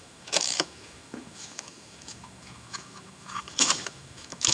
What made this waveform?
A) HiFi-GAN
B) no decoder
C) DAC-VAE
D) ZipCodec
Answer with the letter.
C